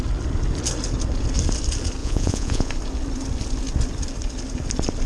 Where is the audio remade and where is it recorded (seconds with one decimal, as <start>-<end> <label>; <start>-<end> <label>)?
0.0-2.0 recorded; 2.0-2.7 remade; 2.7-5.1 recorded

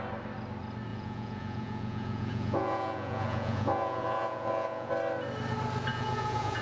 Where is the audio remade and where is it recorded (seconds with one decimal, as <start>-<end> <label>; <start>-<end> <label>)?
0.0-0.9 recorded; 0.9-4.9 remade; 4.9-5.9 recorded; 5.9-6.6 remade

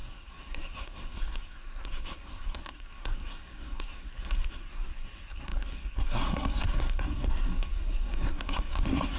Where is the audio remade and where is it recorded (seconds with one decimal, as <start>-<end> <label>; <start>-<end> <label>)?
0.0-9.2 remade

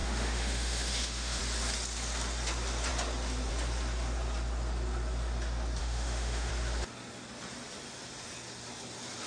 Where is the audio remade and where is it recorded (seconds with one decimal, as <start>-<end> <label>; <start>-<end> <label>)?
0.0-1.4 remade; 1.4-5.8 recorded; 5.8-6.5 remade; 6.5-9.3 recorded

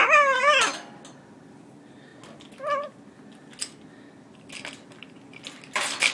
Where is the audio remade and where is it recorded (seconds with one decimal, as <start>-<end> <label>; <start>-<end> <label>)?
0.0-6.1 recorded

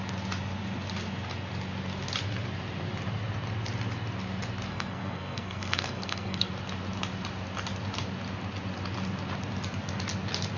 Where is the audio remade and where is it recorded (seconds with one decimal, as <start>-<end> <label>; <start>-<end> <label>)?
0.0-4.7 recorded; 4.7-6.5 remade; 6.5-10.6 recorded

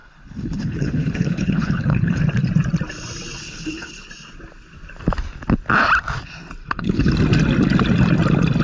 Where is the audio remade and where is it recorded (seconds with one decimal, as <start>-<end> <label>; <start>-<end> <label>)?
0.0-2.2 remade; 2.2-3.4 recorded; 3.4-4.1 remade; 4.1-6.6 recorded; 6.6-7.1 remade; 7.1-8.6 recorded

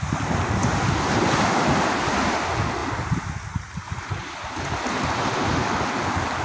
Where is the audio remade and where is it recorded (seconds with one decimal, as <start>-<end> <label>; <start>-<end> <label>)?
0.0-0.6 recorded; 0.6-2.4 remade; 2.4-2.8 recorded; 2.8-5.4 remade; 5.4-6.4 recorded